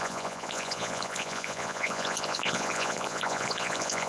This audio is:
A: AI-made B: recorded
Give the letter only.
A